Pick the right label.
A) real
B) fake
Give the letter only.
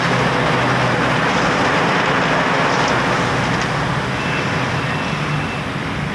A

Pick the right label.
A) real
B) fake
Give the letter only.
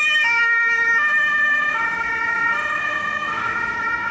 B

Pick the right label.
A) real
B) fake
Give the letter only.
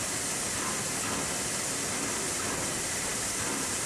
A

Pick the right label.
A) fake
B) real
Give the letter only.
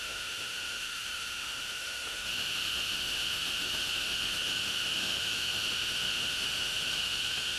A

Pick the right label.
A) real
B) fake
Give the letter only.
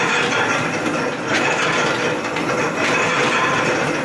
A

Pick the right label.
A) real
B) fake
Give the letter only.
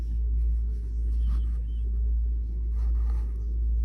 A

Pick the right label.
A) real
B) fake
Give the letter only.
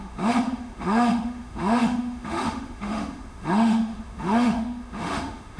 B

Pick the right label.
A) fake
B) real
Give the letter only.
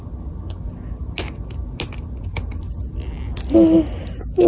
B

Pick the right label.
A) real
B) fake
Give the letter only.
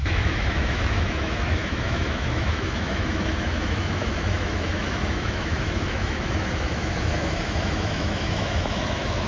B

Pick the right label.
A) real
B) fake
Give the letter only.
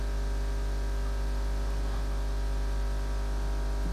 A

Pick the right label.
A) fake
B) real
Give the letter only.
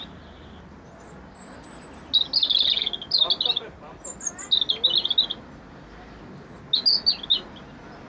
B